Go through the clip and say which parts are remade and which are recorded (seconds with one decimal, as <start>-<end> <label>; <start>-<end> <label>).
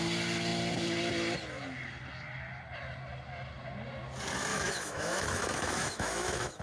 0.0-4.5 recorded; 4.5-6.6 remade